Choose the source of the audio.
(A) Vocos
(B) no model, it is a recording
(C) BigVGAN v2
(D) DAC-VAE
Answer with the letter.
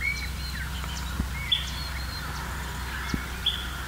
B